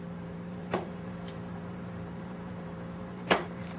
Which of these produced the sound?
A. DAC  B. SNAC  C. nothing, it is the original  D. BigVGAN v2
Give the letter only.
D